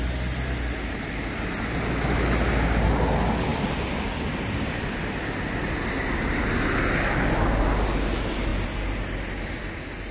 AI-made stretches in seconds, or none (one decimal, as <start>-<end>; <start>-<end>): none